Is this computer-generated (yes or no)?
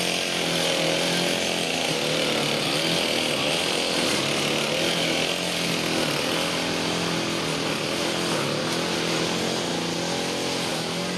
no